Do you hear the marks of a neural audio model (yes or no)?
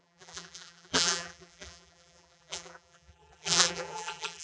yes